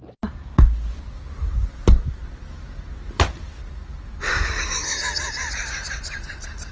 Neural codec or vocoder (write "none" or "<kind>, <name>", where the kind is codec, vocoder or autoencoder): none